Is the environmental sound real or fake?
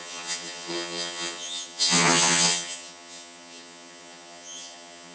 fake